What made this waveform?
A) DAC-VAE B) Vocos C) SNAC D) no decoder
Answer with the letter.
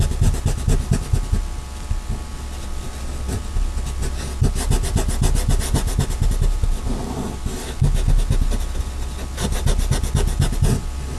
D